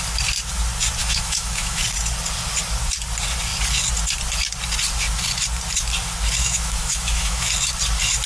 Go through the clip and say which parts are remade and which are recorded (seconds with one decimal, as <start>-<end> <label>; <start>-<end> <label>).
0.0-1.0 recorded; 1.0-1.8 remade; 1.8-6.4 recorded; 6.4-7.5 remade; 7.5-8.3 recorded